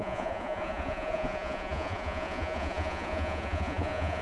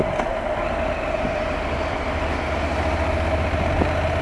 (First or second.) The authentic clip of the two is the second